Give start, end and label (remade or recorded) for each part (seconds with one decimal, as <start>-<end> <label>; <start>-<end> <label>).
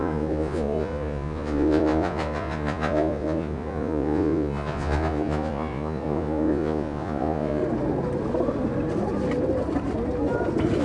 0.0-7.6 remade; 7.6-10.8 recorded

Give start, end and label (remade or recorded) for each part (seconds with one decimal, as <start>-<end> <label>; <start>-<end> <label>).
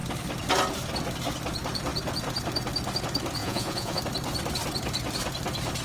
0.0-3.4 recorded; 3.4-4.0 remade; 4.0-5.8 recorded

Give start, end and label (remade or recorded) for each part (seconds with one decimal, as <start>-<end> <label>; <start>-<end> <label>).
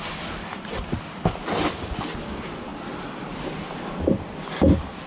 0.0-5.1 recorded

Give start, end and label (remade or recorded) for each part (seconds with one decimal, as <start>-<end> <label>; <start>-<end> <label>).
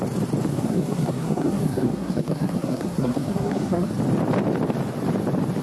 0.0-0.5 recorded; 0.5-3.9 remade; 3.9-5.6 recorded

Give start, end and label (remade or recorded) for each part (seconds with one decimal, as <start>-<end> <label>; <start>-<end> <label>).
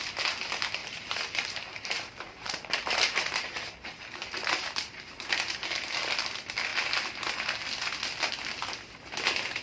0.0-0.8 recorded; 0.8-5.3 remade; 5.3-9.6 recorded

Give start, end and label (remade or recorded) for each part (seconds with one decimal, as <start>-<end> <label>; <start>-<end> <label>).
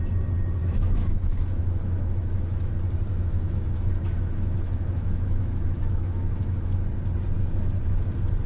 0.0-0.6 recorded; 0.6-2.7 remade; 2.7-3.1 recorded; 3.1-6.8 remade; 6.8-8.5 recorded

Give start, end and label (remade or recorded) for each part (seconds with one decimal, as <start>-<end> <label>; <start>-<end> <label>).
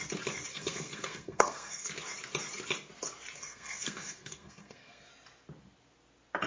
0.0-0.5 recorded; 0.5-1.9 remade; 1.9-3.4 recorded; 3.4-5.1 remade; 5.1-6.5 recorded